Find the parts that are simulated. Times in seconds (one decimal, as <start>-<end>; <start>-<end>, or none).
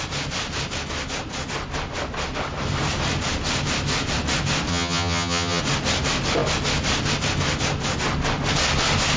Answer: 4.7-5.6